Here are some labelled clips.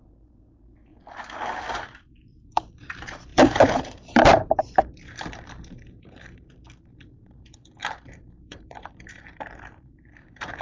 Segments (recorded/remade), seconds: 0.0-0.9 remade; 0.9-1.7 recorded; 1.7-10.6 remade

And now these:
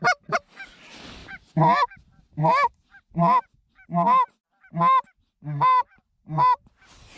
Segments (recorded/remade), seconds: 0.0-7.2 recorded